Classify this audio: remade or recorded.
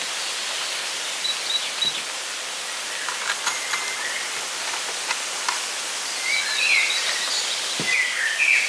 recorded